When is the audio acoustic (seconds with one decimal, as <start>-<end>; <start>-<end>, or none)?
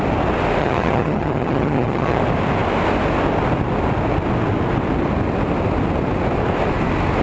0.0-0.6; 2.2-7.2